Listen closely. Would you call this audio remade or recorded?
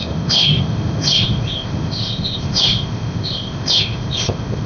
remade